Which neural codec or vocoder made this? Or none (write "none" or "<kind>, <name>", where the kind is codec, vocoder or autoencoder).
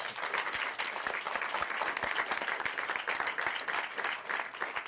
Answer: none